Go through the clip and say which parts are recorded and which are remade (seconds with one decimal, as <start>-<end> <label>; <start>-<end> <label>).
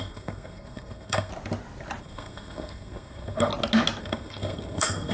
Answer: 0.0-1.3 remade; 1.3-2.0 recorded; 2.0-3.5 remade; 3.5-4.0 recorded; 4.0-5.1 remade